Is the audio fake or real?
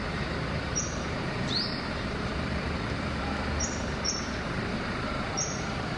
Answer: fake